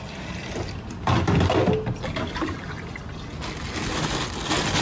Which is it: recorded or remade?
recorded